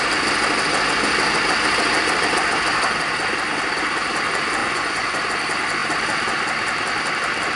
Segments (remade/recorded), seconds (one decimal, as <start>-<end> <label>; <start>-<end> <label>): 0.0-4.6 recorded; 4.6-5.2 remade; 5.2-7.6 recorded